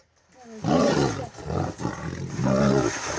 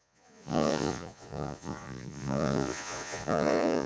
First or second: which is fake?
second